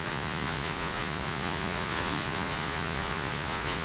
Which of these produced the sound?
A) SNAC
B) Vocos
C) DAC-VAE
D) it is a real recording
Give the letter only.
B